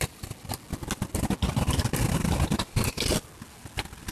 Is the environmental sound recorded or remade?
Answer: recorded